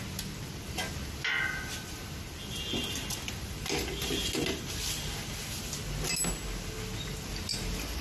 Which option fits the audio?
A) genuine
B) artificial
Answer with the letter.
A